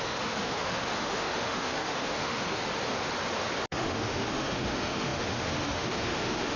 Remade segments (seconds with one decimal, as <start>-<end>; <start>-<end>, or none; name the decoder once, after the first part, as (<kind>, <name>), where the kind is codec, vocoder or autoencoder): 0.0-2.6 (autoencoder, DAC-VAE); 3.7-6.6